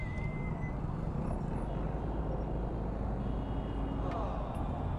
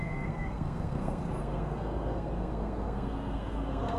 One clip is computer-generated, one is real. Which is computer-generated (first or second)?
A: second